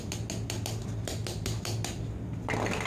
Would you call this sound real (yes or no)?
yes